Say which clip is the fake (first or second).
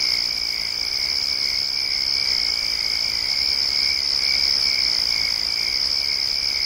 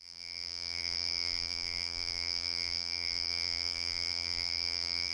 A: second